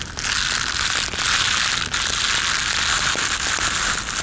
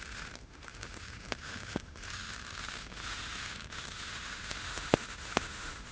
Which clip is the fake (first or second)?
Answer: second